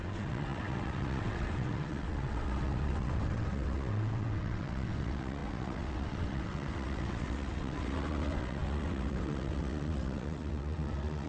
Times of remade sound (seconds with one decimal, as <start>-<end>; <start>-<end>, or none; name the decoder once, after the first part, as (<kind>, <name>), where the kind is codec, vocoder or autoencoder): 0.0-11.3 (vocoder, WaveNeXt)